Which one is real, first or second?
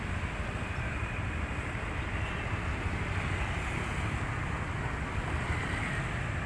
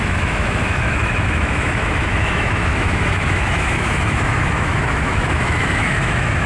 first